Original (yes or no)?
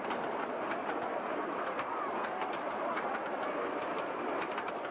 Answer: yes